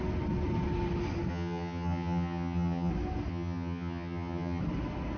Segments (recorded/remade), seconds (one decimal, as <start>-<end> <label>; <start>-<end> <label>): 0.0-1.3 recorded; 1.3-2.9 remade; 2.9-3.3 recorded; 3.3-4.6 remade; 4.6-5.2 recorded